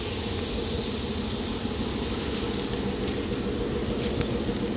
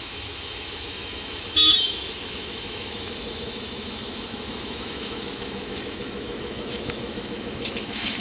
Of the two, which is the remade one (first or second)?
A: second